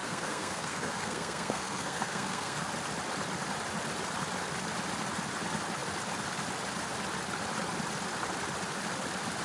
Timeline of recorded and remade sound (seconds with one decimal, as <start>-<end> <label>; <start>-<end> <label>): 0.0-2.7 remade; 2.7-9.4 recorded